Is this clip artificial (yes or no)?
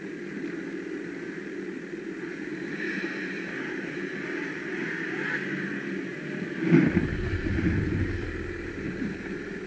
yes